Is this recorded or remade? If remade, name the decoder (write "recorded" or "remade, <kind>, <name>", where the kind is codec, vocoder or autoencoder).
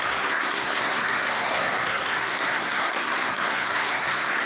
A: remade, codec, SNAC